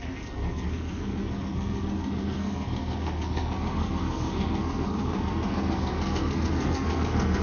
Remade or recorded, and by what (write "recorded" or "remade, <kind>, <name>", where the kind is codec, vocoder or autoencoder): remade, codec, SNAC